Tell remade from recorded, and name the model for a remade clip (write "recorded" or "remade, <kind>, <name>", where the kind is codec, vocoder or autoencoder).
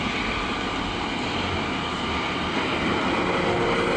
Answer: recorded